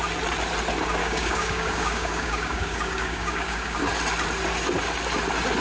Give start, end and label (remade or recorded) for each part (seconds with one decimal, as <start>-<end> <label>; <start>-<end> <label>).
0.0-1.0 recorded; 1.0-3.8 remade; 3.8-5.6 recorded